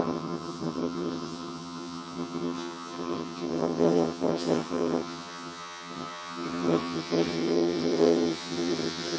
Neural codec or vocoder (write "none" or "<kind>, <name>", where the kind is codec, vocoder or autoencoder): vocoder, HiFi-GAN